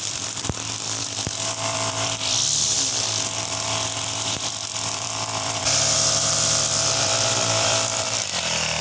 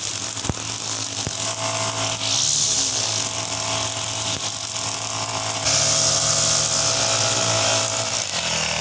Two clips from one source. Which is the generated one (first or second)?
first